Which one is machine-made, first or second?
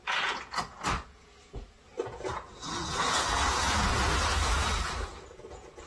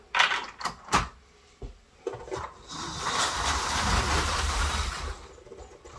first